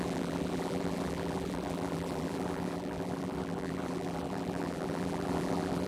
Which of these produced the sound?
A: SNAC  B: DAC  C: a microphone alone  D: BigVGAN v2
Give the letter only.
D